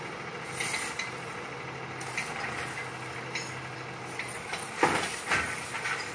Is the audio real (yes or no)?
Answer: yes